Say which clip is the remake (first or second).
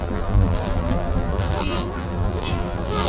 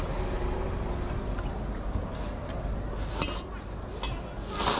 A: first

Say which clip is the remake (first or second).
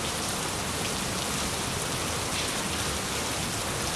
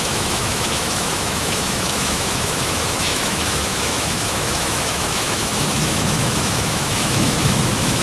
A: second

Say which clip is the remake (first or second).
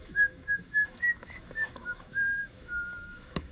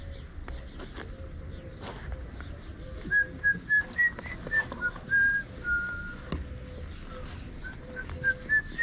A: first